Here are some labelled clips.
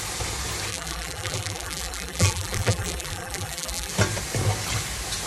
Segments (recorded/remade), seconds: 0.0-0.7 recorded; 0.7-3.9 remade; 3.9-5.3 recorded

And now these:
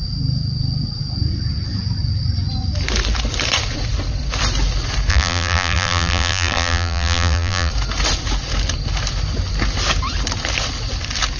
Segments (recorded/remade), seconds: 0.0-5.1 recorded; 5.1-7.7 remade; 7.7-11.4 recorded